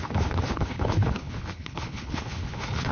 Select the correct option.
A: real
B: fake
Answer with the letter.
B